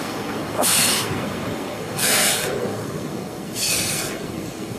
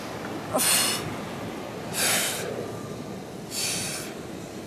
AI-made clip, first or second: first